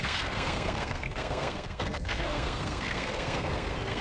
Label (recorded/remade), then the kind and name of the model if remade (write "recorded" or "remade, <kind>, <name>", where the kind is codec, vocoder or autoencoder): remade, codec, SNAC